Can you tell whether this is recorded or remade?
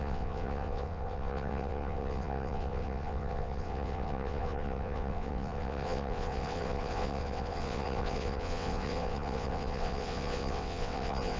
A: remade